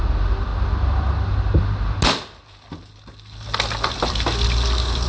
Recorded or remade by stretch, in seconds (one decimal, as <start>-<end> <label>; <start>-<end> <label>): 0.0-5.1 recorded